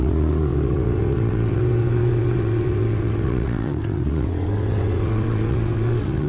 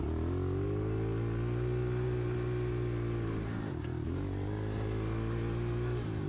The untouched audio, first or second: second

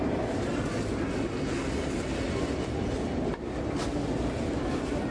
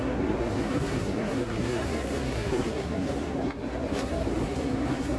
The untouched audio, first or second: first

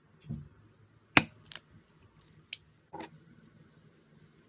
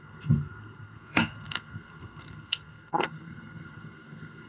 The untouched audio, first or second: first